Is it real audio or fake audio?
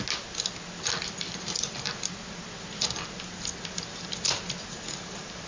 real